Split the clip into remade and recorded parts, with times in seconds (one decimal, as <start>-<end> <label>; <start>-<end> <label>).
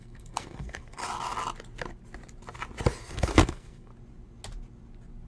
0.0-1.0 remade; 1.0-3.0 recorded; 3.0-3.9 remade; 3.9-5.3 recorded